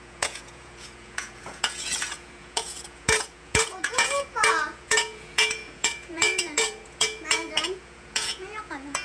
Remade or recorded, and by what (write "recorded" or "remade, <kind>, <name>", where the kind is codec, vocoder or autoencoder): remade, vocoder, Vocos